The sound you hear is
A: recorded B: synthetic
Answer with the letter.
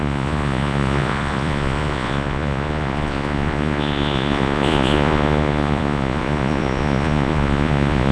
B